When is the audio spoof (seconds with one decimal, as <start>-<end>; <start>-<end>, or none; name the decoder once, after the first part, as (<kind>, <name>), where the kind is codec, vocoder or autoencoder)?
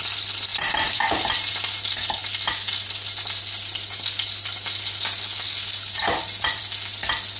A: 0.5-1.5 (vocoder, BigVGAN v2)